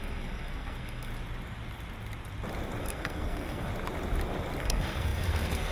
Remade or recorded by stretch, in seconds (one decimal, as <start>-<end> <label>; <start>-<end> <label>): 0.0-1.1 remade; 1.1-2.8 recorded; 2.8-3.7 remade; 3.7-4.6 recorded; 4.6-5.7 remade